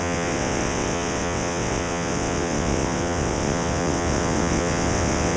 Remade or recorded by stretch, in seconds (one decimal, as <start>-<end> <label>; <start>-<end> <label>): 0.0-5.4 remade